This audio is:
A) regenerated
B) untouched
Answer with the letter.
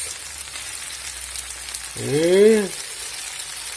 B